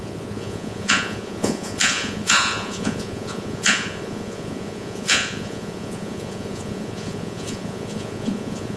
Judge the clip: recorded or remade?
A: remade